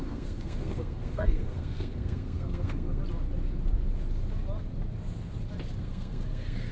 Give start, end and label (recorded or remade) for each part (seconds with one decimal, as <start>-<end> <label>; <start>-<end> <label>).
0.0-3.0 remade; 3.0-5.8 recorded; 5.8-6.7 remade